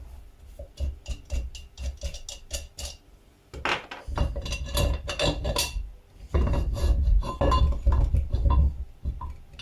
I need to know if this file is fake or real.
real